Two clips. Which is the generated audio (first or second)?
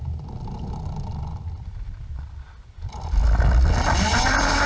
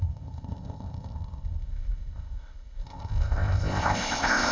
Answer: second